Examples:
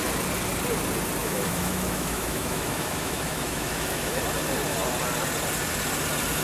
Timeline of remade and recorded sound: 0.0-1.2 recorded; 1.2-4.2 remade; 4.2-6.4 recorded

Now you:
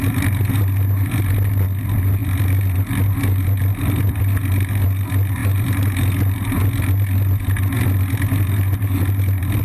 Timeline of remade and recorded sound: 0.0-9.6 recorded

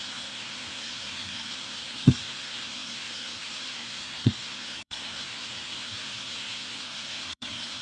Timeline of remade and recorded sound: 0.0-7.8 remade

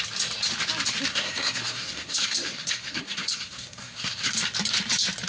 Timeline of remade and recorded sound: 0.0-1.1 recorded; 1.1-4.3 remade; 4.3-5.3 recorded

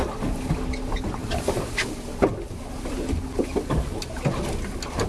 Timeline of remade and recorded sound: 0.0-5.1 recorded

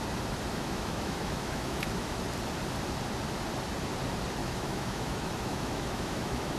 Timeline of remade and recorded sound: 0.0-0.5 recorded; 0.5-2.2 remade; 2.2-4.4 recorded; 4.4-6.6 remade